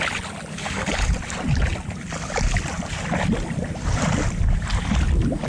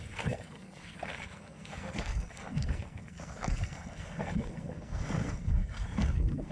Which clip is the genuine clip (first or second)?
first